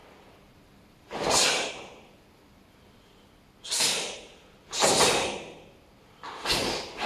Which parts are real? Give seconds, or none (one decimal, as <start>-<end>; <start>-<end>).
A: 0.0-7.1